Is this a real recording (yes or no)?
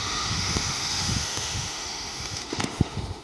no